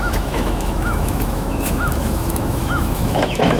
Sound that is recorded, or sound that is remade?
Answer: remade